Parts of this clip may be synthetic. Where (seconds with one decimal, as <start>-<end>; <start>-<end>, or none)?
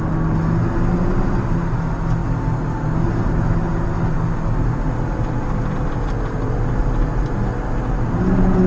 none